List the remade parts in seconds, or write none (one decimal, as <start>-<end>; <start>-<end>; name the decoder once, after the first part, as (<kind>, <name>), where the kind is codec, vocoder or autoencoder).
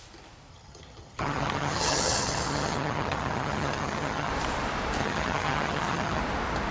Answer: 0.5-4.3 (vocoder, HiFi-GAN); 5.0-6.2